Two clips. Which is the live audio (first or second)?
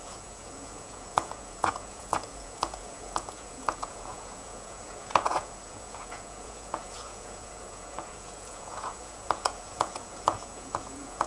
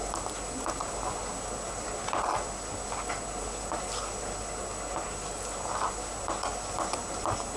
second